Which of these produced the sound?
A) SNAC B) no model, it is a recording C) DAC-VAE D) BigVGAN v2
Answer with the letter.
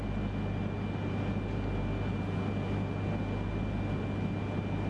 B